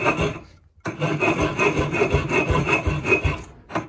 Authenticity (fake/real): real